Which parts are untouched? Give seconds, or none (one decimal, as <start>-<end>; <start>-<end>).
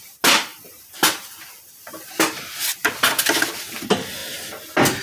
0.0-5.0